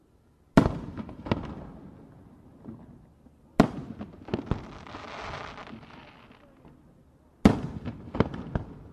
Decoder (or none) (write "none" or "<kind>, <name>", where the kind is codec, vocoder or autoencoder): none